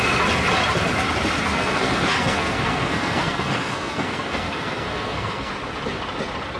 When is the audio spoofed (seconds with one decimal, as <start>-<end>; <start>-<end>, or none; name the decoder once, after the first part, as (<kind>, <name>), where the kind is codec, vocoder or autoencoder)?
1.5-5.5 (codec, SNAC)

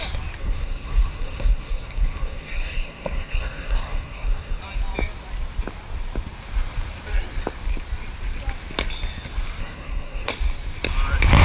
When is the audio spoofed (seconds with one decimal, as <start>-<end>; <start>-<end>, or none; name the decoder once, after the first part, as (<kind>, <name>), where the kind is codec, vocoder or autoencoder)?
0.4-4.6 (codec, SNAC); 9.6-10.3